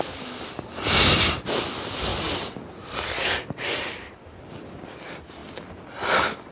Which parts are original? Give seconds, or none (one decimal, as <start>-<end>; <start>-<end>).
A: 0.0-6.5